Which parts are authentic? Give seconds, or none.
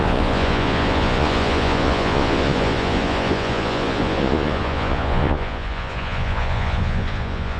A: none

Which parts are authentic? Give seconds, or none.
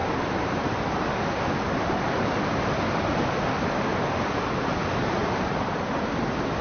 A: 0.8-6.6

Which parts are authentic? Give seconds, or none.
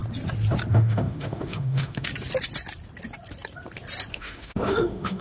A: 0.0-0.7; 2.1-4.1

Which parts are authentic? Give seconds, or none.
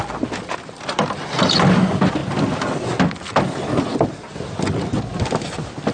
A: 0.0-5.9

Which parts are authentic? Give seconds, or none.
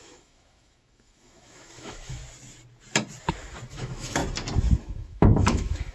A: 2.2-3.7; 4.2-4.8